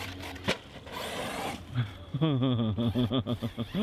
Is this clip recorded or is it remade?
remade